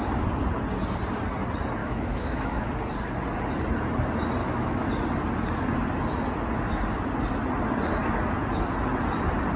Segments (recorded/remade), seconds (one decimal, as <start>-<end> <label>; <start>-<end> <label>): 0.0-1.8 recorded; 1.8-2.7 remade; 2.7-4.4 recorded; 4.4-4.9 remade; 4.9-9.6 recorded